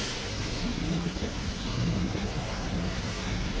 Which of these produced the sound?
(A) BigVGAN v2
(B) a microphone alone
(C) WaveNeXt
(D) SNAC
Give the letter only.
D